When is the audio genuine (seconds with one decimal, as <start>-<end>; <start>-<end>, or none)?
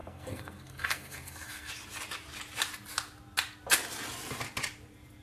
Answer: 1.7-5.2